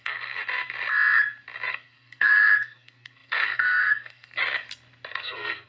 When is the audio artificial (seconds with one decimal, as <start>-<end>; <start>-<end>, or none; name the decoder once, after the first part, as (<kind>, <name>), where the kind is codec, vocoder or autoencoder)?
0.0-0.4 (codec, SNAC); 1.7-4.4; 5.1-5.7